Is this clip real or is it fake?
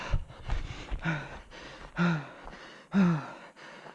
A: real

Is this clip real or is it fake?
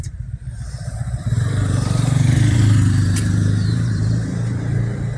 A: fake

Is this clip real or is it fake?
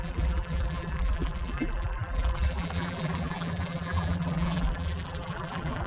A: fake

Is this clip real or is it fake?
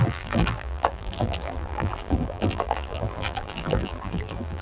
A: fake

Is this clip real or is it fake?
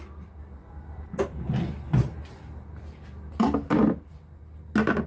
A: real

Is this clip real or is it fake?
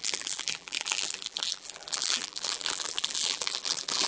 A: fake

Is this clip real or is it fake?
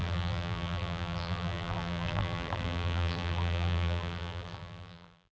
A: fake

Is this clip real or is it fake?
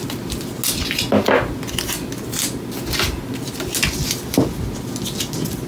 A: real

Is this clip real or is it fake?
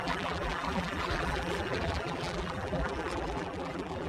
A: fake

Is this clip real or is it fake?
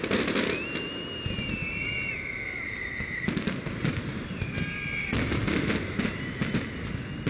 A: real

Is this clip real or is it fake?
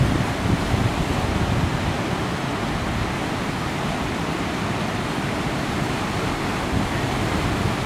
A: real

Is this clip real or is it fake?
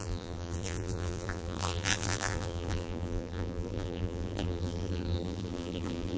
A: fake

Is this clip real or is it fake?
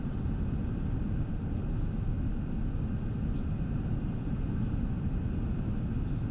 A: real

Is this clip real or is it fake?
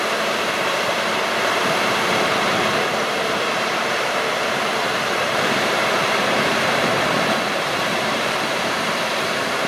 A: fake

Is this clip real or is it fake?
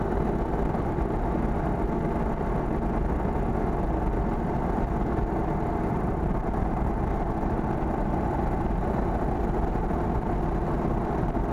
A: real